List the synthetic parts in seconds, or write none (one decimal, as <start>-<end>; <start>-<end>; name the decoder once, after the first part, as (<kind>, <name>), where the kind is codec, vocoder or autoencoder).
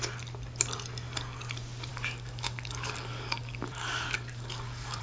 1.9-5.0 (codec, DAC)